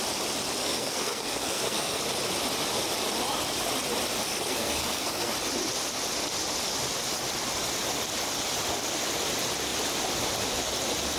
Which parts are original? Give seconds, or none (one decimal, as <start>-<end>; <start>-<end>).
0.0-0.6; 2.0-4.2; 5.3-11.2